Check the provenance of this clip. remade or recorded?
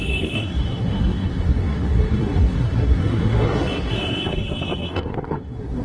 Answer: remade